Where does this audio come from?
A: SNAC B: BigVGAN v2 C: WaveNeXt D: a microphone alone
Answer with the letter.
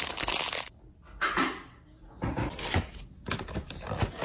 D